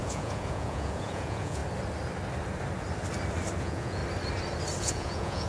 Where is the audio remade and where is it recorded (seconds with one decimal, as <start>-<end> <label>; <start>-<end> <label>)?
0.0-1.6 remade; 1.6-3.6 recorded; 3.6-4.0 remade; 4.0-4.8 recorded; 4.8-5.5 remade